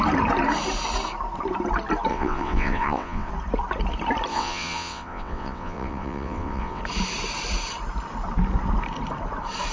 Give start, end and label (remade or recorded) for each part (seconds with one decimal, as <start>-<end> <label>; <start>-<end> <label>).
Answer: 0.0-2.1 recorded; 2.1-3.3 remade; 3.3-4.3 recorded; 4.3-6.8 remade; 6.8-9.7 recorded